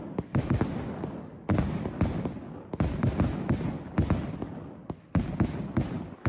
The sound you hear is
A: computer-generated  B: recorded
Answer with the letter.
B